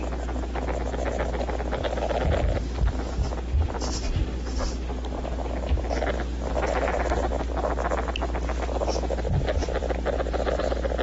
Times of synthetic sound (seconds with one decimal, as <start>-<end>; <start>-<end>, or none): none